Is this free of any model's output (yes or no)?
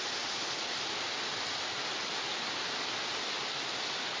yes